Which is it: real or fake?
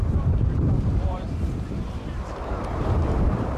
fake